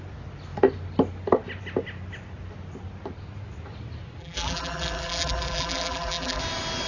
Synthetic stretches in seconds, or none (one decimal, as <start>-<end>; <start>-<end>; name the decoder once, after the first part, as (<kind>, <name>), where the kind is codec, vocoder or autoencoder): 4.2-6.4 (vocoder, BigVGAN v2)